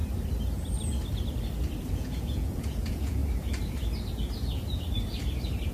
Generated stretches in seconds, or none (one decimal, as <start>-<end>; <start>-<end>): 1.9-3.2